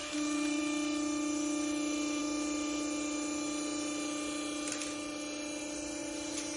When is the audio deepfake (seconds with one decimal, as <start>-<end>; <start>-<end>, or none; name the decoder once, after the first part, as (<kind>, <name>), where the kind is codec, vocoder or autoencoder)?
0.0-0.6 (vocoder, BigVGAN v2); 6.0-6.6